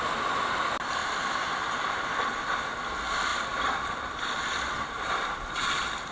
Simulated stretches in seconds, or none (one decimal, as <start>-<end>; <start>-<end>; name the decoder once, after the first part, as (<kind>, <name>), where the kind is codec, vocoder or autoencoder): 3.3-5.4 (vocoder, BigVGAN v2)